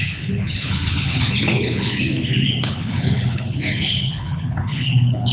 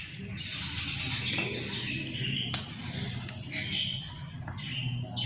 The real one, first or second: second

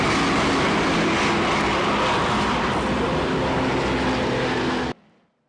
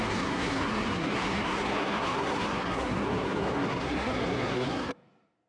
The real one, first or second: first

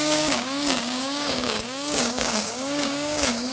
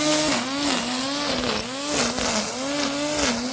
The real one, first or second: second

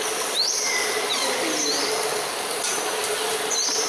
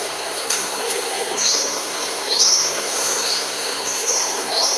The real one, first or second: first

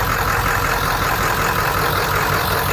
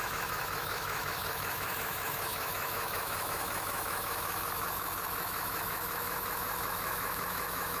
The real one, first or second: first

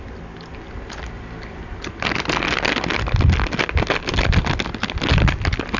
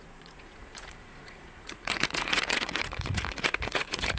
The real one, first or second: first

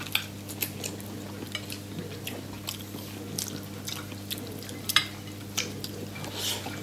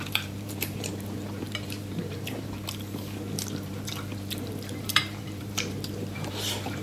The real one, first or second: first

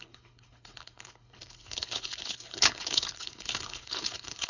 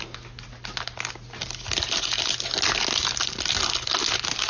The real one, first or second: second